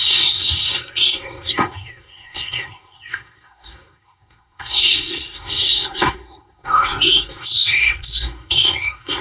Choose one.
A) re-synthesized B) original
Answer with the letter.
A